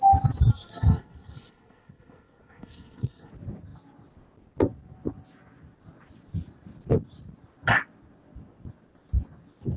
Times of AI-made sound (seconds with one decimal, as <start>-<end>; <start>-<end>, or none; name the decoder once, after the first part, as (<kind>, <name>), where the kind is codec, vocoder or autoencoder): 0.5-3.3 (codec, SNAC)